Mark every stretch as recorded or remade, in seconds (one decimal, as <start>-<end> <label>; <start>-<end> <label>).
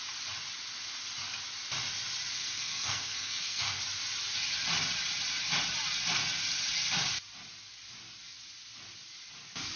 0.0-2.4 recorded; 2.4-3.8 remade; 3.8-9.8 recorded